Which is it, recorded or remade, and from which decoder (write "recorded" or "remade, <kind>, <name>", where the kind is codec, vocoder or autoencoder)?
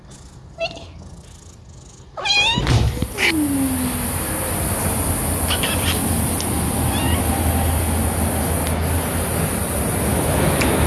recorded